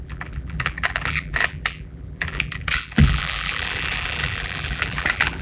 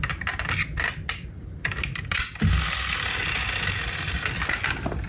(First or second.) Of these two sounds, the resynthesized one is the first